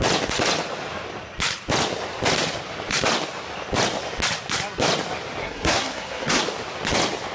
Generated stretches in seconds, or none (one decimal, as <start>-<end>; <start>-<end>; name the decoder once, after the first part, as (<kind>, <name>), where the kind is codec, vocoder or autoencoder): 5.4-6.4 (codec, SNAC)